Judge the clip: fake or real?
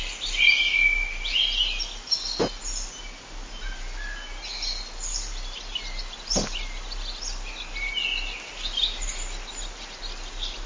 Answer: real